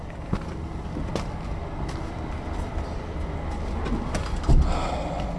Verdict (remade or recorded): recorded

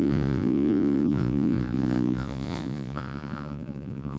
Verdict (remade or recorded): remade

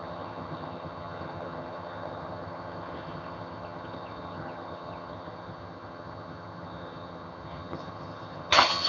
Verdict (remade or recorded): remade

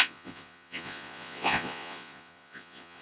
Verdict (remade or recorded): remade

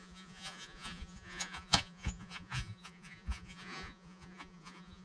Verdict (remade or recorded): remade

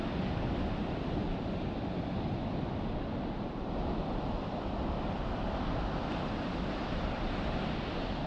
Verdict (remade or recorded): recorded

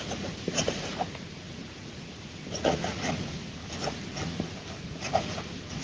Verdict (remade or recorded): remade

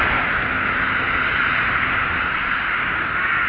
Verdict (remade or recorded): recorded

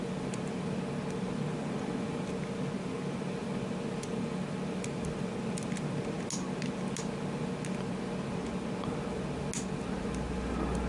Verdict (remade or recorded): recorded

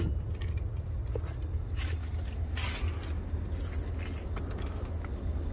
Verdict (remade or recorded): recorded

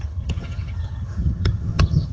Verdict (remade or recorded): remade